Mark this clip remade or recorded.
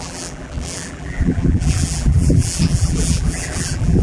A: remade